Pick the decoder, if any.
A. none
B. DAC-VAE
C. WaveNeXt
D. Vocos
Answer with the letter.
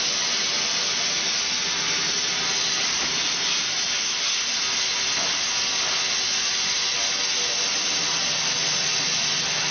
A